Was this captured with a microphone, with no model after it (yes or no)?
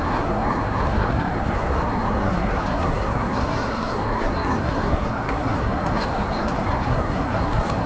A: no